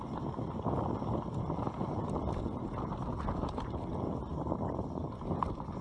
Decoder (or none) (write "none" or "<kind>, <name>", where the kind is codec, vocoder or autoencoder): none